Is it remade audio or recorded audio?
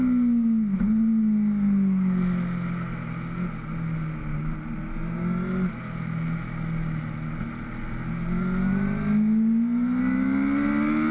recorded